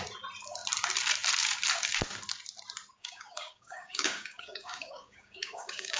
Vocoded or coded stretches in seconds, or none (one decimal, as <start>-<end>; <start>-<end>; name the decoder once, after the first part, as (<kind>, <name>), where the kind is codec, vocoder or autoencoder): 3.0-6.0 (codec, DAC)